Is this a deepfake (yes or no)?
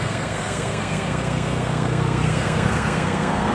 yes